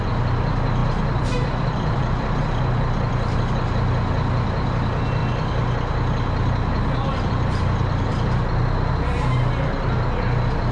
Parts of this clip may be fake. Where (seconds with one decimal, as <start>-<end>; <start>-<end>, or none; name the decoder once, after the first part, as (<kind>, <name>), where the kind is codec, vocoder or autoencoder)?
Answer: 0.8-3.4 (vocoder, BigVGAN v2)